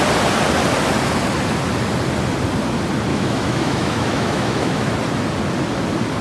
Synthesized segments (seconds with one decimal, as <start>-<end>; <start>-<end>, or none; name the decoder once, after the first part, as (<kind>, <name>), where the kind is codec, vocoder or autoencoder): 3.1-4.9 (autoencoder, DAC-VAE)